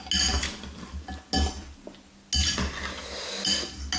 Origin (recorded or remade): recorded